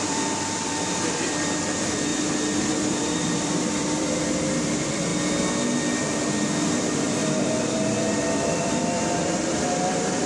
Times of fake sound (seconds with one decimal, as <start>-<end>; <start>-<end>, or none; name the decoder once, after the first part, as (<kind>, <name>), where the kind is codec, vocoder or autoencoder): 0.0-2.1 (vocoder, BigVGAN v2); 2.7-5.1; 6.7-10.3